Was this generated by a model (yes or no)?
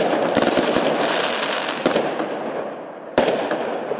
yes